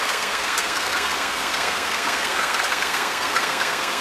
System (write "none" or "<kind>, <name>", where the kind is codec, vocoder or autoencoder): codec, SNAC